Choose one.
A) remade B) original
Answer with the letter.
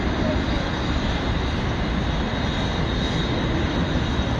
B